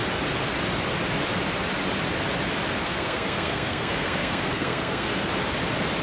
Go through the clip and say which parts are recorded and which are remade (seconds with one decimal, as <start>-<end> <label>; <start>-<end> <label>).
0.0-2.8 recorded; 2.8-5.3 remade; 5.3-6.0 recorded

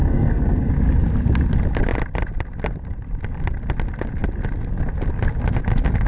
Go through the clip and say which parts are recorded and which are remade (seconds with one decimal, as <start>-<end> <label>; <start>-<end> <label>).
0.0-0.7 remade; 0.7-6.1 recorded

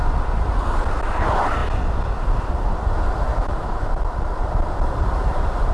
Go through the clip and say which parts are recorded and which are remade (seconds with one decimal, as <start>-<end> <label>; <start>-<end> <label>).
0.0-3.3 recorded; 3.3-3.9 remade; 3.9-5.7 recorded